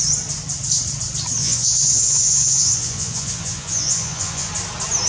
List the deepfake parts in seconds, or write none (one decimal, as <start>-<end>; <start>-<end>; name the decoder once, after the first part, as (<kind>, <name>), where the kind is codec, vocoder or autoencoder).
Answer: 1.4-4.5 (vocoder, Vocos)